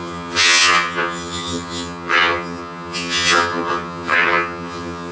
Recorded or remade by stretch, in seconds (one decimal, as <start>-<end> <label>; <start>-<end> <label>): 0.0-5.1 remade